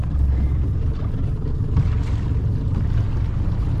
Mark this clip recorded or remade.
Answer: recorded